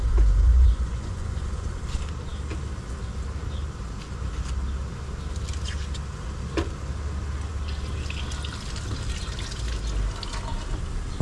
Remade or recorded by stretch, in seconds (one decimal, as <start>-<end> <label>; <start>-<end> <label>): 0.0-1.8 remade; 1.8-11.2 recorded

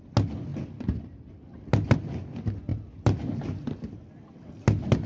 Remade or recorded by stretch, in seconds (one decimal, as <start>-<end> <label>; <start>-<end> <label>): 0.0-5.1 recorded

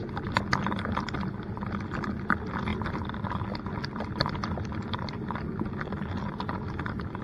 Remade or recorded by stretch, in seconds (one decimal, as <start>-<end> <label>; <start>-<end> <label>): 0.0-7.2 recorded

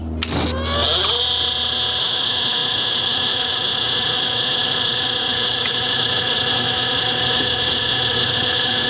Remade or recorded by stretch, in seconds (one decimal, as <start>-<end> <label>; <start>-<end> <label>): 0.0-2.0 recorded; 2.0-8.9 remade